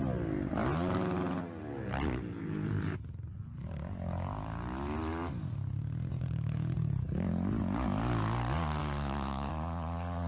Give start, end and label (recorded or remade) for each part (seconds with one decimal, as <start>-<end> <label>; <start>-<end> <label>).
0.0-8.8 recorded; 8.8-9.5 remade; 9.5-10.3 recorded